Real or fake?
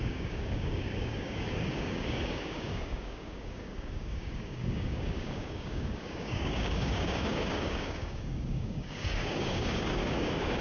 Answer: fake